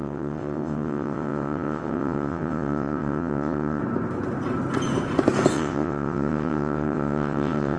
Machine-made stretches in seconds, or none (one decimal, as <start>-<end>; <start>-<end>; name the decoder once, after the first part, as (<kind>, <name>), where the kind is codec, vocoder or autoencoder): 0.0-3.8 (vocoder, WaveNeXt); 5.5-7.8